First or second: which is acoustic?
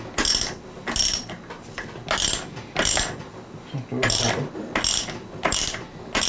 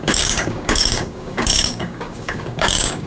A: first